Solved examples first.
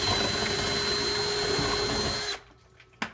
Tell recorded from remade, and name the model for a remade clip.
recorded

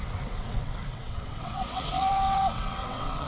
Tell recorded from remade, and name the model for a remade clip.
remade, vocoder, WaveNeXt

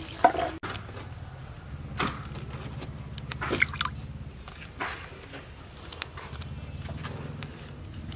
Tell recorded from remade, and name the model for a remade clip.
recorded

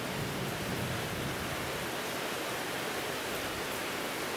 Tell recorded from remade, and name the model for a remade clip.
recorded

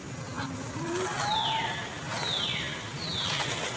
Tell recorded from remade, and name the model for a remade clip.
recorded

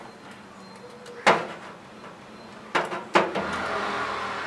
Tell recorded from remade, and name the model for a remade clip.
recorded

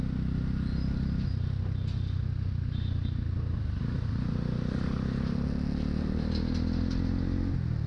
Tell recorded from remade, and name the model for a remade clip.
recorded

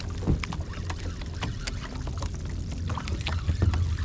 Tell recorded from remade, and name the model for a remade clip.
recorded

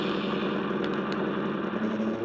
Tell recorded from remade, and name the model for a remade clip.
recorded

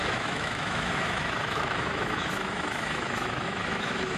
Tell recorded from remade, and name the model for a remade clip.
remade, autoencoder, DAC-VAE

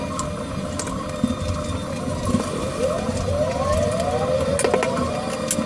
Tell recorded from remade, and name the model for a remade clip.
recorded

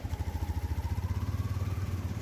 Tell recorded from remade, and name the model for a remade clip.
recorded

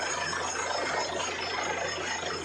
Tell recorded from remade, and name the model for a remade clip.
recorded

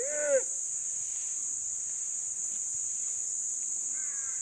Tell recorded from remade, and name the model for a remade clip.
recorded